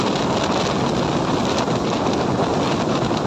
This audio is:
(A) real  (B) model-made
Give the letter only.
A